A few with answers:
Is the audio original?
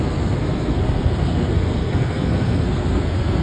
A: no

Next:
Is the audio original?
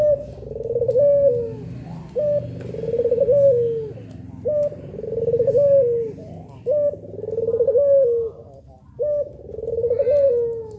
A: yes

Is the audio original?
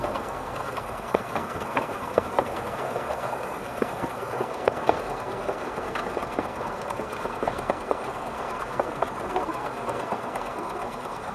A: no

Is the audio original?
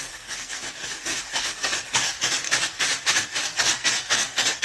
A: no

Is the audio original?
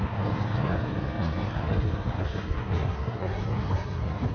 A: no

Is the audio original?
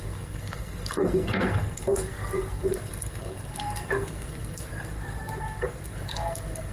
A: no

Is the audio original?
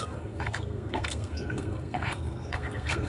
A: no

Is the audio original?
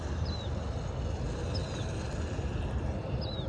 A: yes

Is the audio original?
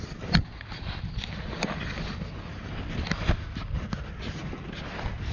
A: yes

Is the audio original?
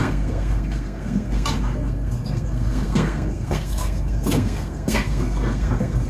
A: no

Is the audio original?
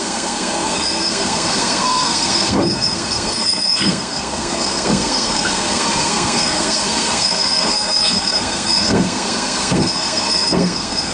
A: no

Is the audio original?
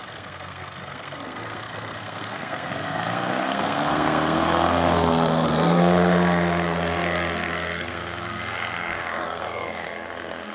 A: no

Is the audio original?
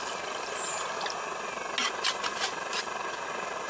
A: yes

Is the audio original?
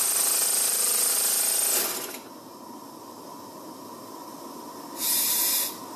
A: yes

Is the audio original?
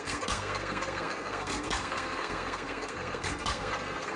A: no